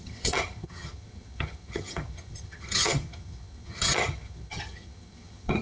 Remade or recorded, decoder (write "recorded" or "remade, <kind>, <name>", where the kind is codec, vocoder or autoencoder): remade, vocoder, HiFi-GAN